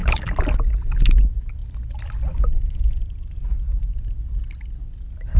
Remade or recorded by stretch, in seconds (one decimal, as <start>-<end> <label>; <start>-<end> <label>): 0.0-5.4 recorded